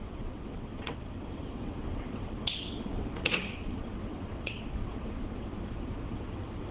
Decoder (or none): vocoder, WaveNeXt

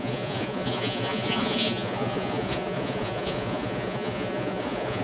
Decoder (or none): vocoder, Vocos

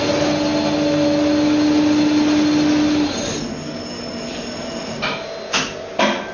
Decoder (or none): none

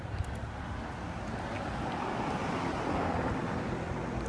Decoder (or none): none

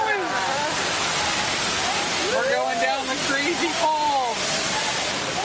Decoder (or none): none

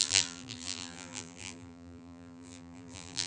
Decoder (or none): vocoder, BigVGAN v2